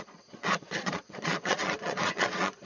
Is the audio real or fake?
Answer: fake